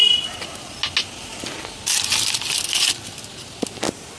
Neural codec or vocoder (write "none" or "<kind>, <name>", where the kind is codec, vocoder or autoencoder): none